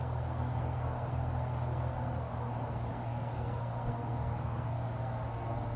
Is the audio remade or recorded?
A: remade